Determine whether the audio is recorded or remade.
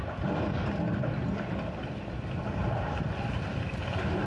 recorded